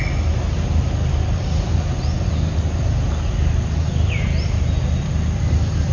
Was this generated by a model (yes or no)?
no